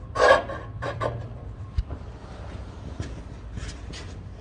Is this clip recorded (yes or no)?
no